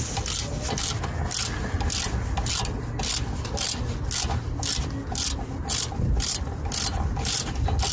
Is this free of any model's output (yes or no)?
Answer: yes